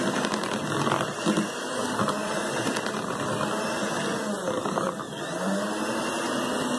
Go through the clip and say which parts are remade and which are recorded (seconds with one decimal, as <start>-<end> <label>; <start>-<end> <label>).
0.0-6.8 recorded